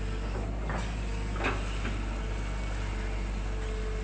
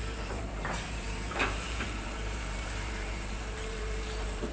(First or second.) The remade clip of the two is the second